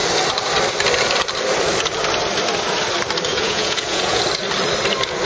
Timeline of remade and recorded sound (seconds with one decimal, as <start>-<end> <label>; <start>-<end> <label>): 0.0-3.3 recorded; 3.3-4.2 remade; 4.2-5.2 recorded